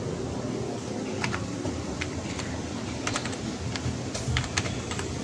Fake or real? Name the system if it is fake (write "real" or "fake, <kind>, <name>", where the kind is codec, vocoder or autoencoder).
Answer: real